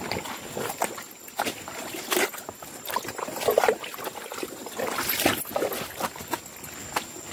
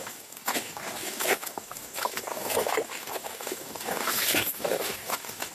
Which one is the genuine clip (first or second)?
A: first